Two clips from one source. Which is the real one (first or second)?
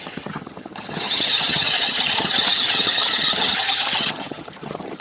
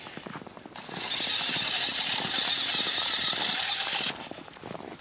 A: second